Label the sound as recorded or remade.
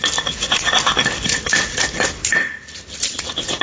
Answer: recorded